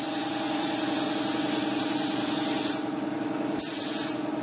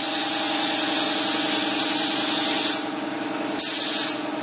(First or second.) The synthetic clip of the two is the first